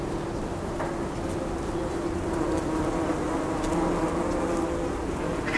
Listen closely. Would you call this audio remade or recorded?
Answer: recorded